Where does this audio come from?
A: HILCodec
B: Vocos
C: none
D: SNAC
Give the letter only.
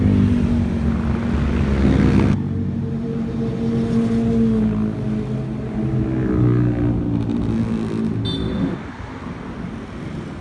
C